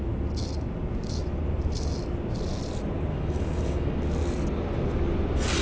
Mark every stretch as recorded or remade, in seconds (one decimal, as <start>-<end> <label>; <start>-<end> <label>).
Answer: 0.0-3.1 recorded; 3.1-3.9 remade; 3.9-5.6 recorded